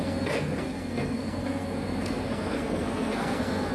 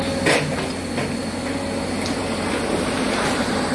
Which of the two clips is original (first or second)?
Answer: second